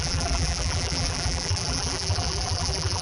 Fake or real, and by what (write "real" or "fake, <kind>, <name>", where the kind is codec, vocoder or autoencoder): fake, vocoder, BigVGAN v2